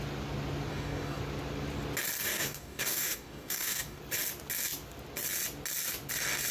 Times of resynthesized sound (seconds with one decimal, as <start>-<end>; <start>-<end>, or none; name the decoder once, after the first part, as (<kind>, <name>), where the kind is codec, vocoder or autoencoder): 0.7-1.2 (codec, DAC); 2.3-4.0